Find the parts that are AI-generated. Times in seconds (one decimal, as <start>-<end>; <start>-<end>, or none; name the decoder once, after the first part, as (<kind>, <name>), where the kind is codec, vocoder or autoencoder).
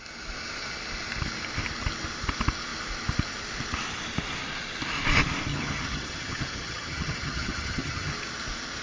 5.5-8.1 (vocoder, HiFi-GAN)